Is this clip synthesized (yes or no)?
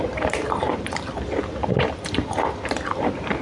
yes